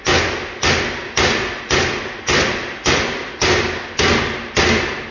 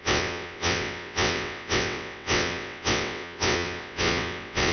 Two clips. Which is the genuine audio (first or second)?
first